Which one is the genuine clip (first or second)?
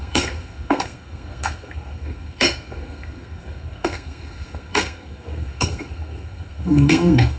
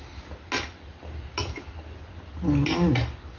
second